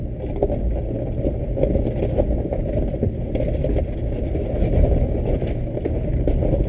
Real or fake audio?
real